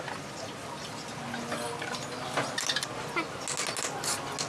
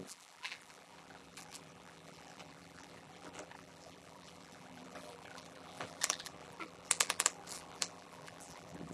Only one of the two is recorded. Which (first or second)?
first